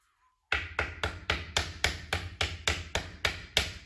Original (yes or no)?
yes